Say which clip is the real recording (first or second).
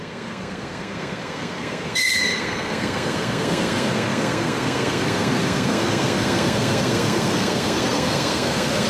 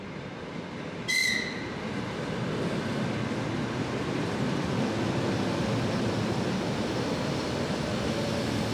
second